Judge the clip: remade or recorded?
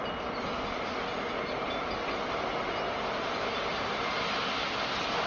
recorded